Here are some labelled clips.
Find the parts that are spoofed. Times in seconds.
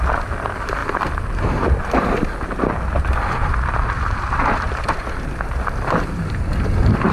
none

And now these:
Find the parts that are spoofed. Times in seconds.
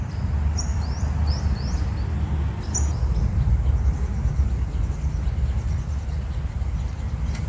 4.1-5.1 (vocoder, BigVGAN v2)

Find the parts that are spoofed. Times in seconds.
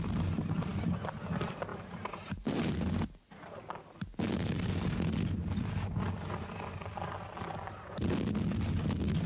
1.7-2.8 (vocoder, BigVGAN v2)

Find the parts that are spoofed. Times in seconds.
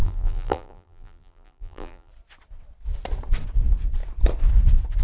0.0-2.1 (vocoder, BigVGAN v2)